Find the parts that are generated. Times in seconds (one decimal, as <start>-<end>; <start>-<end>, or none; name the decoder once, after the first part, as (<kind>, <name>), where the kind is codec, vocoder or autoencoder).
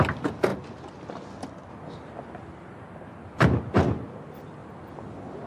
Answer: none